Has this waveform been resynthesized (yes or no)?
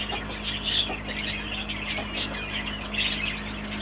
no